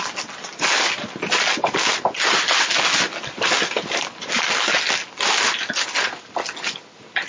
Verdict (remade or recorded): recorded